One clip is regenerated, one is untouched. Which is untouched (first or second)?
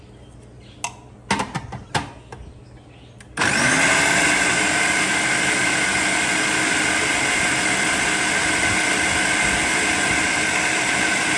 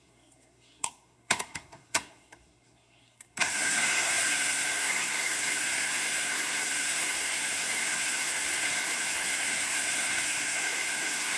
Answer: first